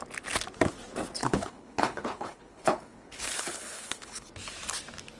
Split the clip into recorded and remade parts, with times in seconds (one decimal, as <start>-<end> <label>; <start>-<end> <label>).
0.0-1.2 recorded; 1.2-4.3 remade; 4.3-5.2 recorded